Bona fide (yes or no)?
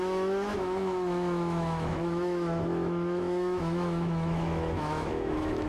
no